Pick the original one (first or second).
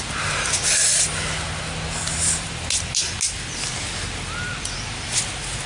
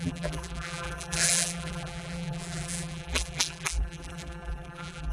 first